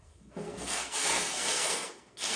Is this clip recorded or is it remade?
remade